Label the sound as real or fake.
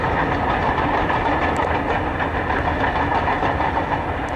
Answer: real